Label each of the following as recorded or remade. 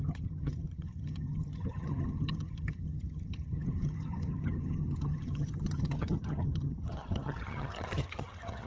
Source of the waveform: remade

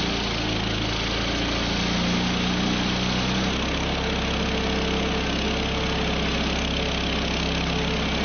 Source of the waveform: recorded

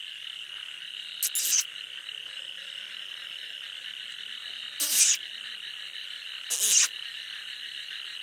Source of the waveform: recorded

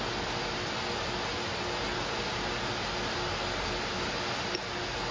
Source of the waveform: recorded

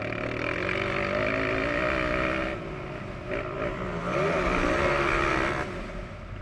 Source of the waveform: recorded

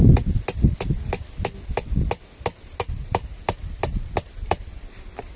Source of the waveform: recorded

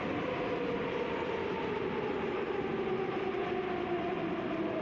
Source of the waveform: recorded